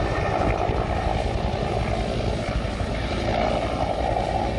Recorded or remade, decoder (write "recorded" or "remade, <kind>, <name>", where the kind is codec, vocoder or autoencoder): recorded